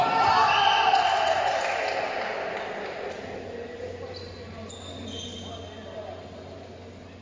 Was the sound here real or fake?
real